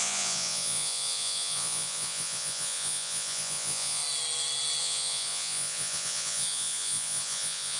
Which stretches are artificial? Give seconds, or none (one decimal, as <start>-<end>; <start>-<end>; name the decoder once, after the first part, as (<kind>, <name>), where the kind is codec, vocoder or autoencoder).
0.0-4.0 (vocoder, Vocos); 4.8-7.8